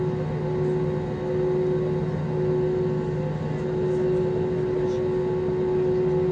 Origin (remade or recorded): recorded